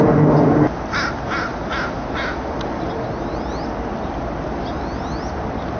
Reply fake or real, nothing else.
real